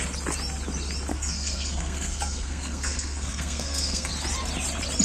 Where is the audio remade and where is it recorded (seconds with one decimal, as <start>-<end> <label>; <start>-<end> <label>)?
0.0-1.1 recorded; 1.1-4.1 remade; 4.1-5.0 recorded